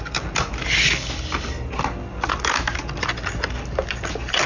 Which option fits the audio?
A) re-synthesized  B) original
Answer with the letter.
B